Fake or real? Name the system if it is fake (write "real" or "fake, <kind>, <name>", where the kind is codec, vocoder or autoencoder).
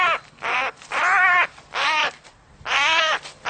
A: real